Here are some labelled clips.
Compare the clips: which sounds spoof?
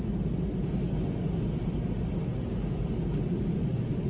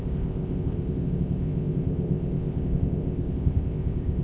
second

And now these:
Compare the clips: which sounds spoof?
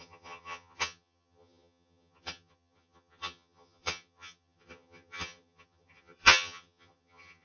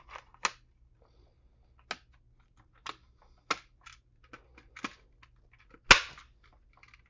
first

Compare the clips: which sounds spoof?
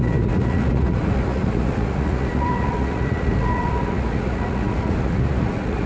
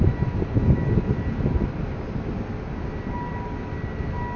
first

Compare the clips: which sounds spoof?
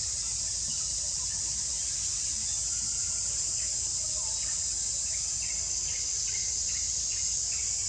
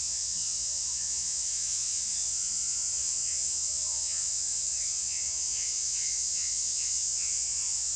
second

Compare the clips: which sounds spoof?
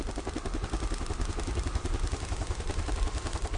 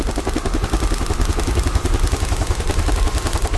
first